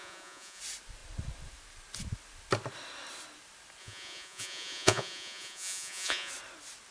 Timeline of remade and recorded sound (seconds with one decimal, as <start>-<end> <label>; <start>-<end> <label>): 0.0-0.6 remade; 0.6-3.8 recorded; 3.8-6.3 remade; 6.3-6.9 recorded

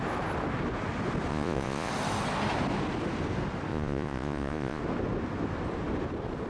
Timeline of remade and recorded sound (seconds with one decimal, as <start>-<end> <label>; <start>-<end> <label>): 0.0-1.3 recorded; 1.3-1.9 remade; 1.9-3.7 recorded; 3.7-4.8 remade; 4.8-6.5 recorded